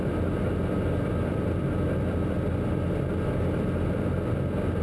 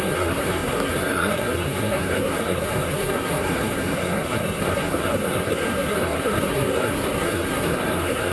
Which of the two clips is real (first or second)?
first